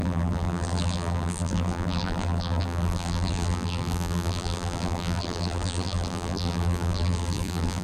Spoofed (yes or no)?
yes